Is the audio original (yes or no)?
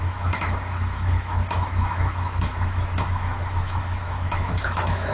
no